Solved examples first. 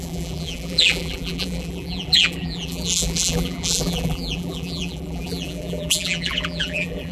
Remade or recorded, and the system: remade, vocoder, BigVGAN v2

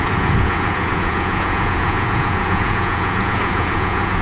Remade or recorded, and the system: remade, vocoder, Vocos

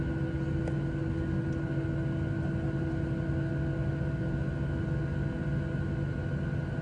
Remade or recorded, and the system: recorded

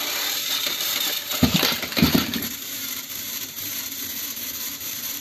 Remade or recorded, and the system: remade, vocoder, BigVGAN v2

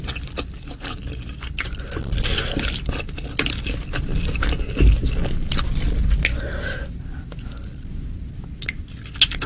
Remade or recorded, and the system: recorded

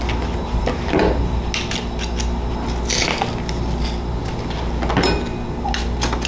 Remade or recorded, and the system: recorded